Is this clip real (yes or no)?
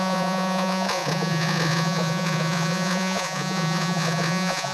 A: no